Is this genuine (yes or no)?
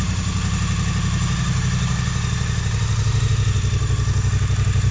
yes